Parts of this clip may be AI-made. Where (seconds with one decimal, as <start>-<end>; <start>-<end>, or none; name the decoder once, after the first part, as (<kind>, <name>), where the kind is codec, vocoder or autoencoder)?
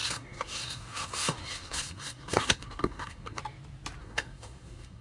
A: 0.0-3.4 (codec, SNAC); 4.0-5.0